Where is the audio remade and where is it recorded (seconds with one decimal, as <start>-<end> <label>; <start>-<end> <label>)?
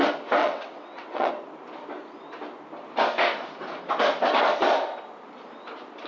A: 0.0-0.4 recorded; 0.4-1.3 remade; 1.3-6.1 recorded